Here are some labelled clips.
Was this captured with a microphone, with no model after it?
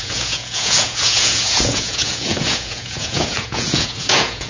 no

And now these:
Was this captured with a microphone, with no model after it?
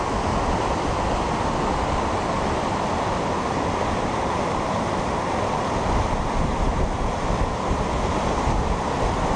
yes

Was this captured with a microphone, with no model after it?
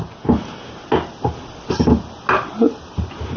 yes